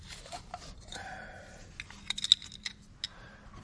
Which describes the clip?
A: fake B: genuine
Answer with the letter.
B